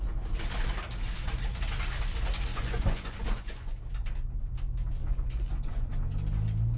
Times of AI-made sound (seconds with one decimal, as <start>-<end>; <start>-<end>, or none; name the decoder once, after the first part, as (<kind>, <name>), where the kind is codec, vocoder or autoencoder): 2.5-3.9 (vocoder, Vocos); 5.0-5.9